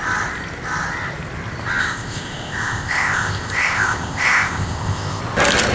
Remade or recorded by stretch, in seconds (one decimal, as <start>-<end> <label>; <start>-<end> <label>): 0.0-1.8 recorded; 1.8-5.2 remade; 5.2-5.7 recorded